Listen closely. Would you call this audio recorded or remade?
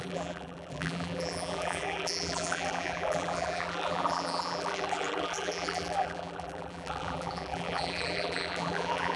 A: remade